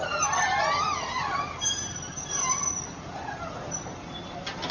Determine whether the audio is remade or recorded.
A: recorded